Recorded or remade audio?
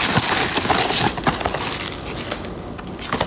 recorded